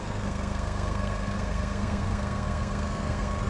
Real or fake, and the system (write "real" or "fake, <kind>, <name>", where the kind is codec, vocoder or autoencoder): fake, codec, SNAC